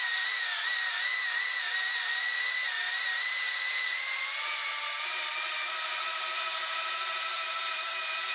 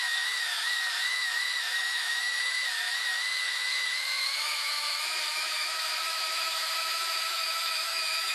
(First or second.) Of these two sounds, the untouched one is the first